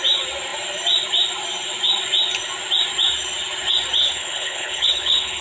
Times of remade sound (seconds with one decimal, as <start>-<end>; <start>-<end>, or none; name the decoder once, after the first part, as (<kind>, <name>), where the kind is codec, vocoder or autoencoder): 4.0-5.4 (codec, HILCodec)